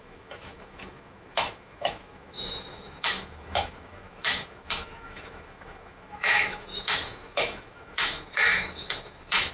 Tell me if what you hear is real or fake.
fake